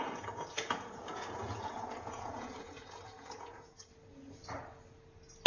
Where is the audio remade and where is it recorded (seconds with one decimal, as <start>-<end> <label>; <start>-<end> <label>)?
0.0-3.9 remade; 3.9-5.5 recorded